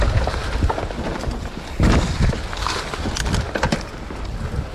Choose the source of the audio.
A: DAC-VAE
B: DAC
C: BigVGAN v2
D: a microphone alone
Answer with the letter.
D